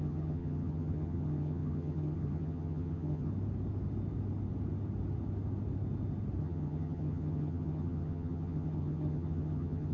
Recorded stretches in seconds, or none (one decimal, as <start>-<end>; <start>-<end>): 3.3-6.4